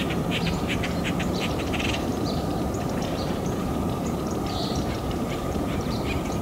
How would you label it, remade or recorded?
remade